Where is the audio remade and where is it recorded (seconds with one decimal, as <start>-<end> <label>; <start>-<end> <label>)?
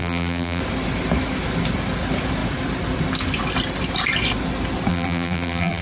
0.0-0.6 remade; 0.6-4.9 recorded; 4.9-5.8 remade